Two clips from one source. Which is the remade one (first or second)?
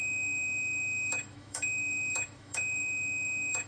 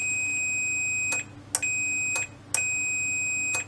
first